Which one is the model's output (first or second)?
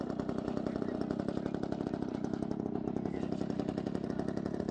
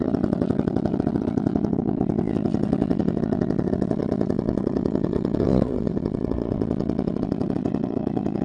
second